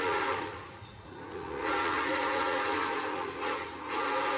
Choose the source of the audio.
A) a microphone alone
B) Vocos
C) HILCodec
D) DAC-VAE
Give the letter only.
B